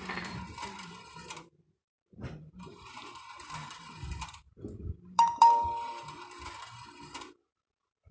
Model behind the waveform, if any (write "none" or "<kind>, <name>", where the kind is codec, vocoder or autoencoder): vocoder, BigVGAN v2